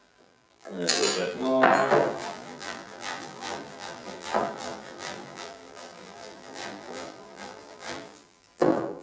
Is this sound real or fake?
fake